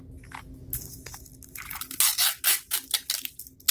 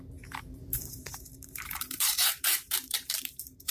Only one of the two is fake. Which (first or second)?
second